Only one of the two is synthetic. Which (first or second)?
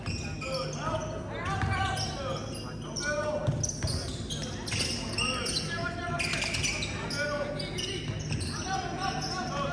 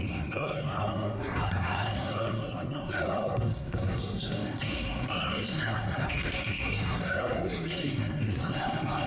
second